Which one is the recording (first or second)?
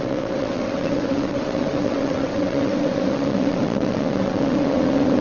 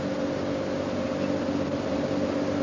second